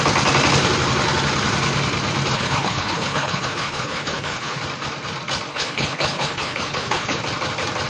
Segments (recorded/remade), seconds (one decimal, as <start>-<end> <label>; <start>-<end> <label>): 0.0-2.3 recorded; 2.3-4.6 remade; 4.6-5.5 recorded; 5.5-7.2 remade; 7.2-7.9 recorded